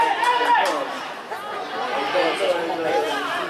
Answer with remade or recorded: recorded